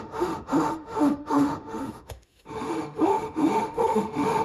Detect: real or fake fake